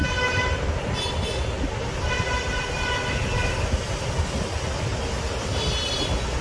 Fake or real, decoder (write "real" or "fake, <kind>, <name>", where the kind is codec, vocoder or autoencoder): real